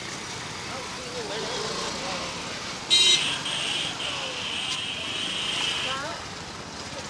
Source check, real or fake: real